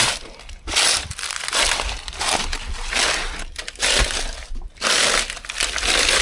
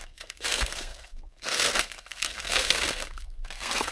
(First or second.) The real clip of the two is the first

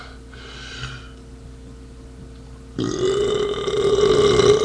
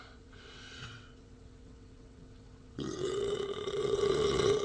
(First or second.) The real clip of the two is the first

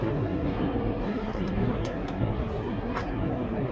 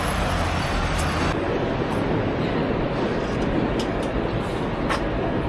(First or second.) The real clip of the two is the second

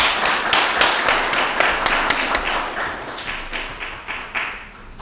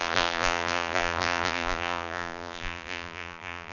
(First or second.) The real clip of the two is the first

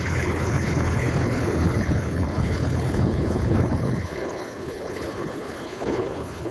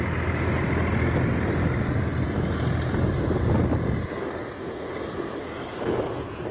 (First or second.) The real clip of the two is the second